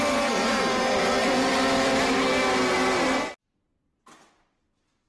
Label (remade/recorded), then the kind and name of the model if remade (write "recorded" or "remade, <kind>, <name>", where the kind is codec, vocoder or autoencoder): recorded